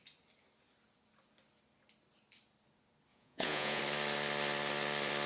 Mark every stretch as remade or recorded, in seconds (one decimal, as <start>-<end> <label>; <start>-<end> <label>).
0.0-3.1 recorded; 3.1-3.8 remade; 3.8-5.3 recorded